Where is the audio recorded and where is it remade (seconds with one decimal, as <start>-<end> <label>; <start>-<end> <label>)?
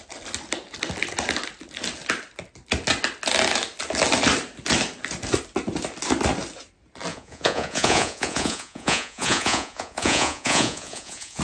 0.0-7.1 recorded; 7.1-11.4 remade